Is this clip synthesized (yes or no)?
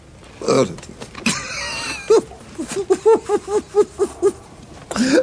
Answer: no